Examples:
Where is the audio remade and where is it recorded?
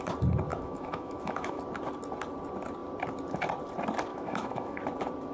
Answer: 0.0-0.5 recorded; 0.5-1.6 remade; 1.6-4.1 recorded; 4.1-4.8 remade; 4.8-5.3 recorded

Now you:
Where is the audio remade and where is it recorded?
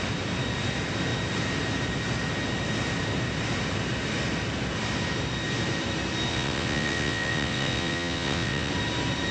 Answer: 0.0-6.3 recorded; 6.3-8.7 remade; 8.7-9.3 recorded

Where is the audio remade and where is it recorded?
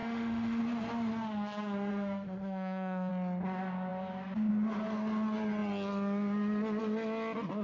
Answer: 0.0-0.6 remade; 0.6-1.9 recorded; 1.9-3.1 remade; 3.1-7.6 recorded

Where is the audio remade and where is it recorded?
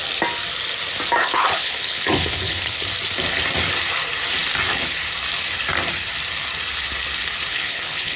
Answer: 0.0-1.2 recorded; 1.2-2.8 remade; 2.8-7.5 recorded; 7.5-8.2 remade